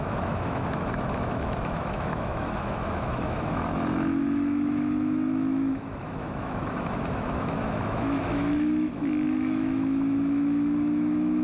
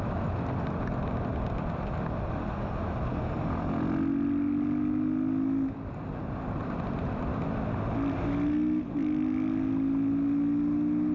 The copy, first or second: first